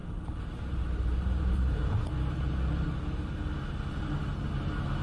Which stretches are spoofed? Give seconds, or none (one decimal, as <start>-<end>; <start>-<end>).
0.0-2.0

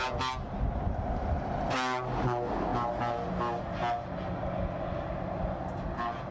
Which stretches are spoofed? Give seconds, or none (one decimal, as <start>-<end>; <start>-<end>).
none

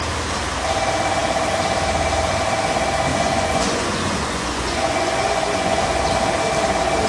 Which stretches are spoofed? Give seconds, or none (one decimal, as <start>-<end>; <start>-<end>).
3.1-6.0

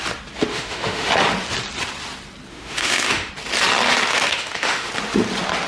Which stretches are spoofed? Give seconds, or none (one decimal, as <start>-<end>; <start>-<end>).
0.5-1.1; 2.5-3.3; 4.1-4.9

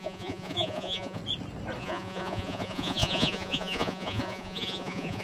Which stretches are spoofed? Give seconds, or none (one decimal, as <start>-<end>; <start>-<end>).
0.0-1.2; 1.8-5.2

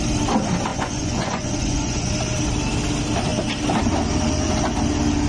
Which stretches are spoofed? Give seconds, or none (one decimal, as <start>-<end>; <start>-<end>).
0.7-2.1

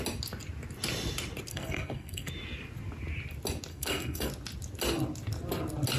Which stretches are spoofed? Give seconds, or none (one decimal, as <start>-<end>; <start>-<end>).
1.5-2.3; 3.7-4.3